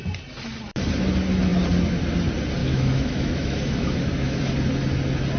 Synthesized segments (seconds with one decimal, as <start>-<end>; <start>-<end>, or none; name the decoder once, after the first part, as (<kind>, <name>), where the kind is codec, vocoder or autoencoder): 2.6-4.4 (autoencoder, DAC-VAE)